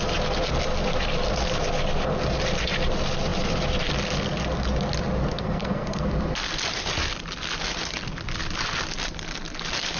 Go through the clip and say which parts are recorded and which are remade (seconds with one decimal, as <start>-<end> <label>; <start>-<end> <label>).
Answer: 0.0-5.2 recorded; 5.2-6.1 remade; 6.1-10.0 recorded